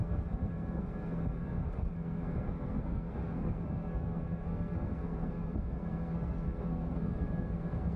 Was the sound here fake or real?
fake